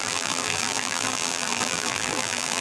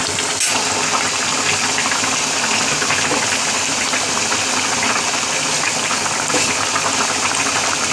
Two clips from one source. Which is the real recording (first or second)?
second